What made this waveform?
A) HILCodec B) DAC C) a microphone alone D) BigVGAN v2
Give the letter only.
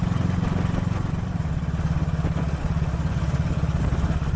C